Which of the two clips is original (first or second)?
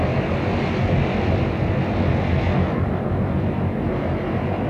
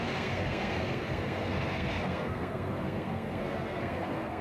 first